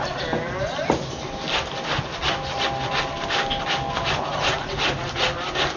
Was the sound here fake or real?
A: real